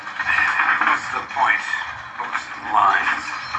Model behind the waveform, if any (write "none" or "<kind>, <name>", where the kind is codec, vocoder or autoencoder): none